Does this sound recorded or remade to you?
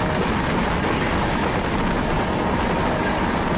recorded